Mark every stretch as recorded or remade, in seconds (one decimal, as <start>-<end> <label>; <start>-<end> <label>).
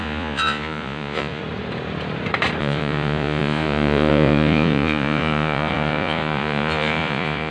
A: 0.0-1.4 remade; 1.4-2.6 recorded; 2.6-7.5 remade